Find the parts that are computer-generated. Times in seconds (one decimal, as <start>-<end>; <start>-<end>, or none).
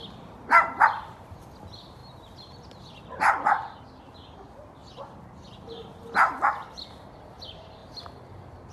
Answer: none